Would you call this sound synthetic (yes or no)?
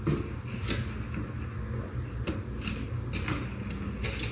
no